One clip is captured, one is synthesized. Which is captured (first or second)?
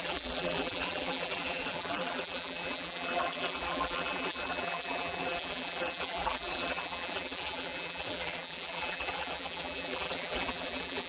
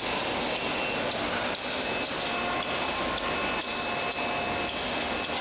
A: second